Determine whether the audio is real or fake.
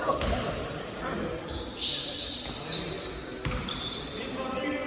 real